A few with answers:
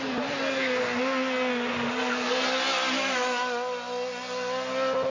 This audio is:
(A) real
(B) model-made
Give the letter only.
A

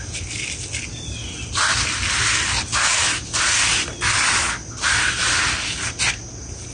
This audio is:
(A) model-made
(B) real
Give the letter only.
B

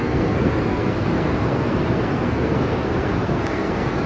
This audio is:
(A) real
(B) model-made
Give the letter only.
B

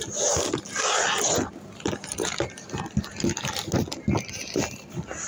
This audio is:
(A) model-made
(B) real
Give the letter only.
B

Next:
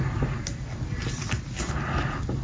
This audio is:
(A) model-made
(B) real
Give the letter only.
B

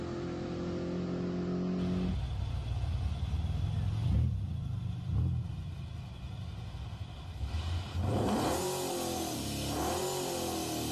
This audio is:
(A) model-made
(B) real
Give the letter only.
B